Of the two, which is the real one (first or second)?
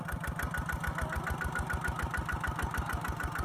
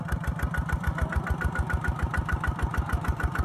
first